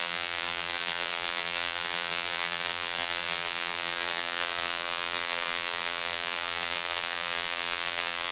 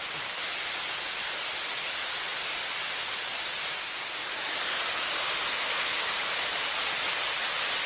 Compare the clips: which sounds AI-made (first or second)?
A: first